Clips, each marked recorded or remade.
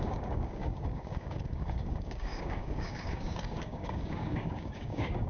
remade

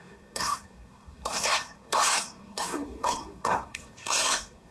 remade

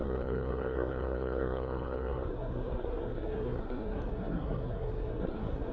remade